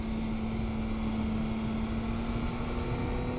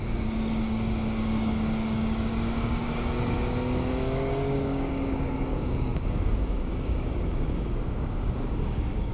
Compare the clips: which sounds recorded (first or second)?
first